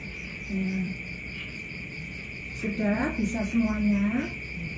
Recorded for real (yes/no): no